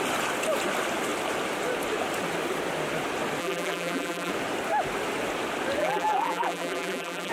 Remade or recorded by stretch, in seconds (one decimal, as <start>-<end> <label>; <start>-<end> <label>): 0.0-3.4 recorded; 3.4-4.3 remade; 4.3-5.8 recorded; 5.8-7.3 remade